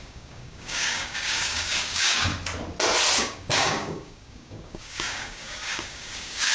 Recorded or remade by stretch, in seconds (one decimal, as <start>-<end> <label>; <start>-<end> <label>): 0.0-2.3 remade; 2.3-3.2 recorded; 3.2-6.5 remade

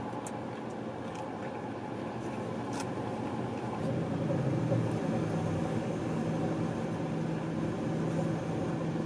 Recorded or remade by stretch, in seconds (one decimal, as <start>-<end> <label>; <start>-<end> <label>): 0.0-5.6 recorded; 5.6-6.2 remade; 6.2-9.1 recorded

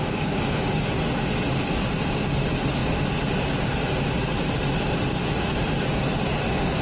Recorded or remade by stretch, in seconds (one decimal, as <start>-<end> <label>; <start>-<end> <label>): 0.0-1.0 remade; 1.0-6.8 recorded

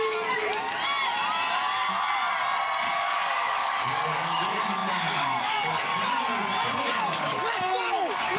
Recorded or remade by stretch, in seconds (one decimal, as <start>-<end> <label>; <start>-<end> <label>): 0.0-0.5 remade; 0.5-2.9 recorded; 2.9-5.9 remade; 5.9-7.0 recorded; 7.0-8.4 remade

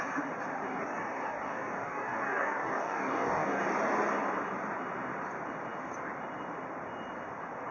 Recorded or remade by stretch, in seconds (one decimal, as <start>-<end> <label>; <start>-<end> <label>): 0.0-0.7 recorded; 0.7-3.6 remade; 3.6-7.7 recorded

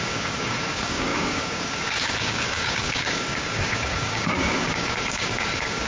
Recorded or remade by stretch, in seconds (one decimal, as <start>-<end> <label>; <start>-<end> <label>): 0.0-5.9 remade

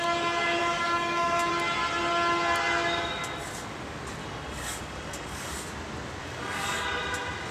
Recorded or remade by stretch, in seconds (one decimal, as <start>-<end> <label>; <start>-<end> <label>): 0.0-0.6 recorded; 0.6-1.5 remade; 1.5-4.2 recorded; 4.2-5.5 remade; 5.5-6.2 recorded; 6.2-7.0 remade; 7.0-7.5 recorded

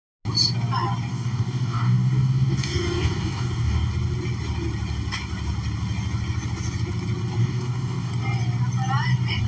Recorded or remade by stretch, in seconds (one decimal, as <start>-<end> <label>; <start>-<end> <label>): 0.0-1.1 recorded; 1.1-3.9 remade; 3.9-7.4 recorded; 7.4-8.1 remade; 8.1-9.5 recorded